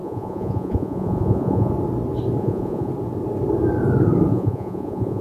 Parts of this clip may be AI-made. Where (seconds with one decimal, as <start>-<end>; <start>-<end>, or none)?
0.0-1.7; 2.4-2.9; 4.3-5.2